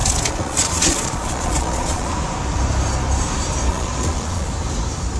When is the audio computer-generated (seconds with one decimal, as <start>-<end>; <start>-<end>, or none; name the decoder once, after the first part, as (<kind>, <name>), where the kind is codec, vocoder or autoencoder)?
0.0-2.1 (vocoder, Vocos); 3.7-4.5